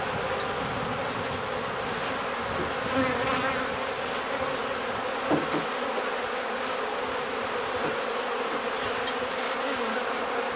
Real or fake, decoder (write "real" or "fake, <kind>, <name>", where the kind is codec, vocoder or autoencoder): real